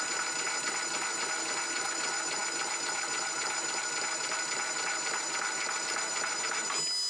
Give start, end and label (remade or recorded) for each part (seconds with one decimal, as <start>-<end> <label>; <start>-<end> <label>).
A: 0.0-7.1 recorded